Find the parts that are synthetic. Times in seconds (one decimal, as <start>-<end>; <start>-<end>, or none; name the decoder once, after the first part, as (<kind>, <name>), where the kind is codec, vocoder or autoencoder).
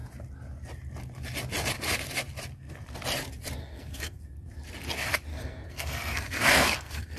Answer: 3.6-4.2 (codec, SNAC); 5.3-7.2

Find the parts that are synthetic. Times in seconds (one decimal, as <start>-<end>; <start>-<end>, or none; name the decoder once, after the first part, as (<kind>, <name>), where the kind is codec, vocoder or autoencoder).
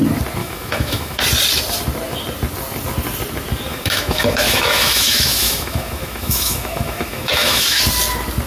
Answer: 0.4-1.2 (autoencoder, DAC-VAE); 3.7-7.8